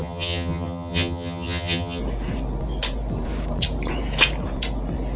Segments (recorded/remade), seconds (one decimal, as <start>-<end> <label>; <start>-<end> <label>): 0.0-2.0 remade; 2.0-5.2 recorded